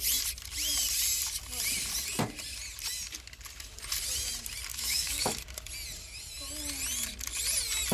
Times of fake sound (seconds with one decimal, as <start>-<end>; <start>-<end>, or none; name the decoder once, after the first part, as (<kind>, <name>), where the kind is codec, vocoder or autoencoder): 4.7-5.4 (autoencoder, DAC-VAE)

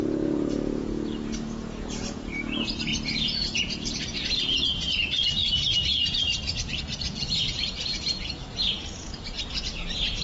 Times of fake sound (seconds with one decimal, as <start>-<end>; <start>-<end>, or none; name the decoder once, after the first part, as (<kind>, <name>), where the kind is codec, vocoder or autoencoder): 0.0-10.2 (vocoder, Vocos)

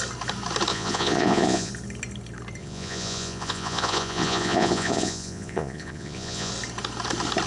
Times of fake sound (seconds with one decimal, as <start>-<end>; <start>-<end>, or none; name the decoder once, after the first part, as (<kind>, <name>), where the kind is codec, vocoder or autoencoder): 0.7-1.7 (vocoder, Vocos); 2.6-6.5

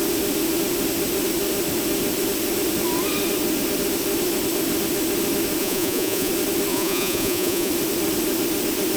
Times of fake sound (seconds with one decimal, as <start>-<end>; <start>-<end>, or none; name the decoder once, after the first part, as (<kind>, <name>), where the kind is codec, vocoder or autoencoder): 5.6-6.3 (vocoder, Vocos); 6.7-7.7

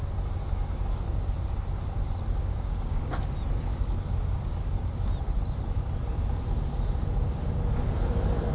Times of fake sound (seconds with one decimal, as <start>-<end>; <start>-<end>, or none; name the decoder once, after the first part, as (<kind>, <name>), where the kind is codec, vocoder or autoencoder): 0.4-1.4 (codec, DAC); 2.4-3.1; 3.7-5.1